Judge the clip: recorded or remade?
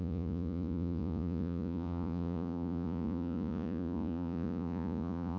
remade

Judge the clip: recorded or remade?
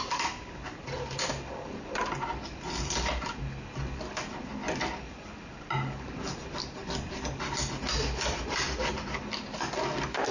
recorded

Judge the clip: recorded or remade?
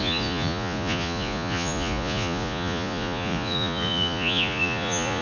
remade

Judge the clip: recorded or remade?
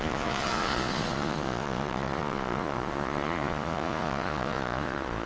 remade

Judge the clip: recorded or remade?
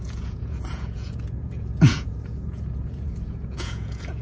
remade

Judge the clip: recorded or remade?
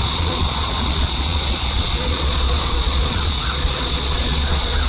remade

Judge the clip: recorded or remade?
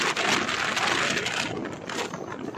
recorded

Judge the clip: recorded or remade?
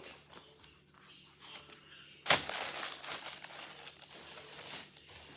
recorded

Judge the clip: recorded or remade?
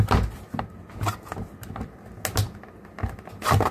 recorded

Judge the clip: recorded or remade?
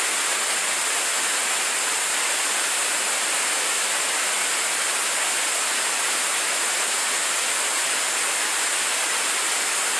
recorded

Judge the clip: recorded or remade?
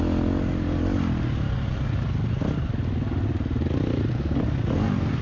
recorded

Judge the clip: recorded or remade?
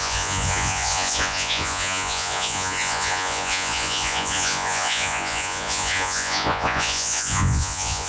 remade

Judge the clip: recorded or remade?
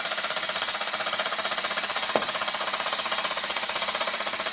remade